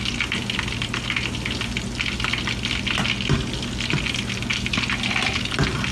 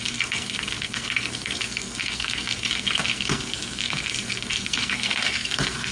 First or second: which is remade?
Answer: second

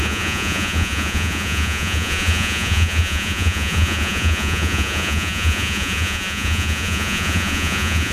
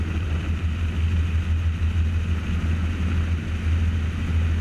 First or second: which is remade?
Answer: first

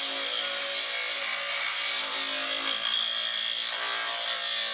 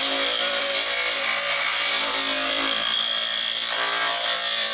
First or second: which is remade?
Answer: second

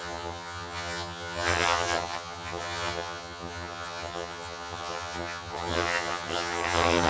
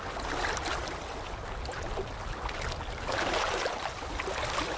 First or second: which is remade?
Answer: first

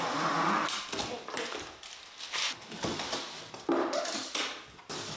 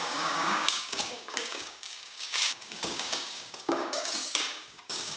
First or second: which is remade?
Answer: second